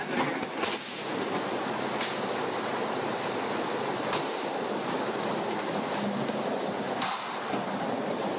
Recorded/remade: recorded